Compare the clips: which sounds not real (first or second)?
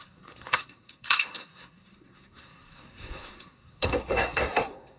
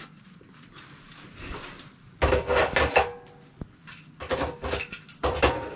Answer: first